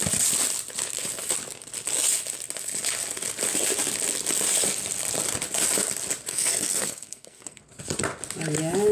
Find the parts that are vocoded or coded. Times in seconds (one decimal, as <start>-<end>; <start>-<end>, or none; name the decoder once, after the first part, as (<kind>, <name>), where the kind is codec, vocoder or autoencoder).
6.3-7.6 (codec, SNAC)